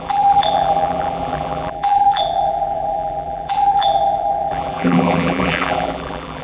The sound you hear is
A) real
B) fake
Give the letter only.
B